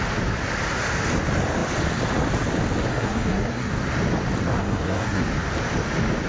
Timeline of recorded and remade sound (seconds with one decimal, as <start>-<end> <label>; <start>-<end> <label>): 0.0-2.9 recorded; 2.9-3.7 remade; 3.7-4.6 recorded; 4.6-5.2 remade; 5.2-6.3 recorded